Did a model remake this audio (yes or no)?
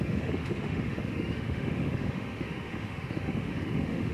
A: yes